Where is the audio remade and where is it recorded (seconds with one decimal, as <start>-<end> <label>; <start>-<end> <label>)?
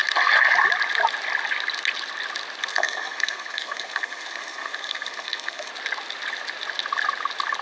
0.0-2.7 recorded; 2.7-5.7 remade; 5.7-7.6 recorded